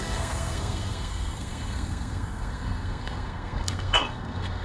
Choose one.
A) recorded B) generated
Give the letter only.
B